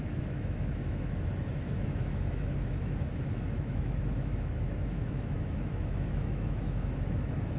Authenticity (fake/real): fake